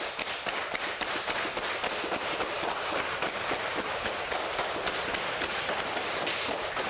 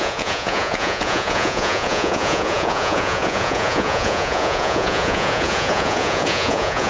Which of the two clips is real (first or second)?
first